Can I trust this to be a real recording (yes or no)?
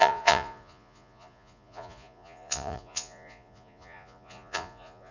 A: no